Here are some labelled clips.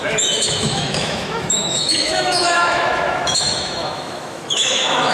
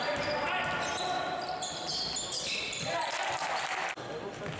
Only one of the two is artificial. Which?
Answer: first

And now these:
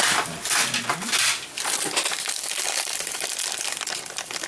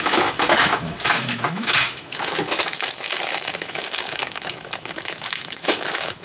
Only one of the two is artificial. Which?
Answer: second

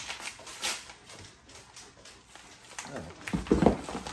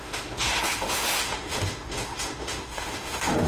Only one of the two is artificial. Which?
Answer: second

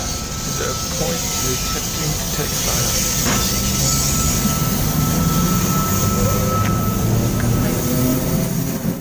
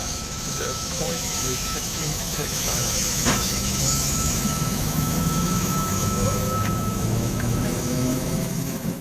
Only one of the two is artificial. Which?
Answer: second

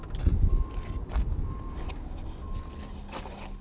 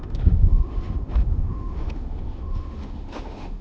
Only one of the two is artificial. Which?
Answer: second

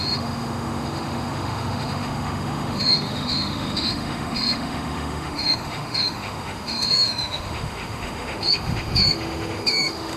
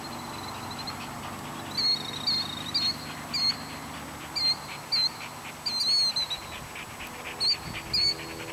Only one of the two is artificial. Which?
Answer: first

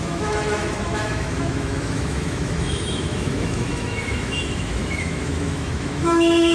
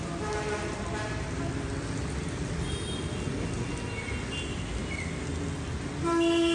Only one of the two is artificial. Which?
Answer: first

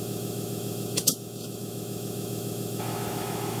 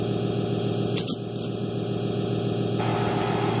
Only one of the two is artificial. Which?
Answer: first